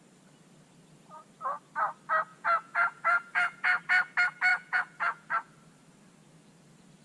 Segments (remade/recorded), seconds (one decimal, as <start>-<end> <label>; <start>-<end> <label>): 0.0-2.3 recorded; 2.3-3.8 remade; 3.8-4.5 recorded; 4.5-5.5 remade; 5.5-7.0 recorded